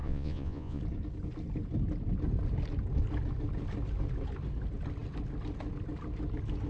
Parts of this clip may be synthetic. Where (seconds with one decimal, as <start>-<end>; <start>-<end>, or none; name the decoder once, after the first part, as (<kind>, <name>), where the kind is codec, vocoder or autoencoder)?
0.0-0.8 (vocoder, Vocos)